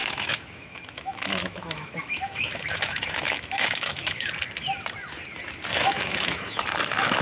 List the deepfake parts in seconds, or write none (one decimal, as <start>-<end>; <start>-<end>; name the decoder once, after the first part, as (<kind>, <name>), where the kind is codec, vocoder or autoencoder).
0.0-4.3 (autoencoder, DAC-VAE); 5.7-6.6